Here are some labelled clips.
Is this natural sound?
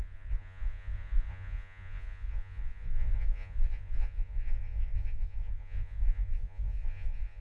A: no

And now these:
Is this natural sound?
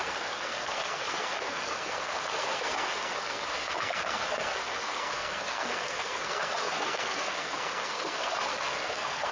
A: no